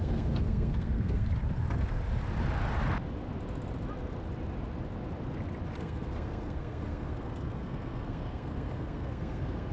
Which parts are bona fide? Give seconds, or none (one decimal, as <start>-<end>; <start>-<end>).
1.3-5.8